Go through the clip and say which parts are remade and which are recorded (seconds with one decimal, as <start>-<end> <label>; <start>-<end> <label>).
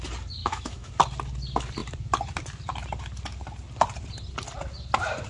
0.0-0.4 recorded; 0.4-0.9 remade; 0.9-5.3 recorded